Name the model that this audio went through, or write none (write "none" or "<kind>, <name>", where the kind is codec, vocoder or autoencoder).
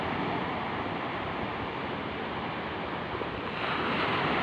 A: none